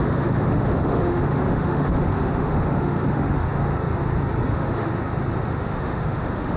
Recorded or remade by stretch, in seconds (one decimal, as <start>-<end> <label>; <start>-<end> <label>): 0.0-3.7 remade; 3.7-4.5 recorded; 4.5-4.9 remade; 4.9-5.5 recorded; 5.5-6.6 remade